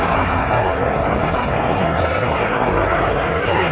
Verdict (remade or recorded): remade